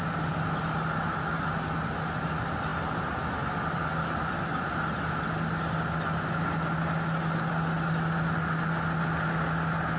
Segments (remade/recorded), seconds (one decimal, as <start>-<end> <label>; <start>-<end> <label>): 0.0-10.0 recorded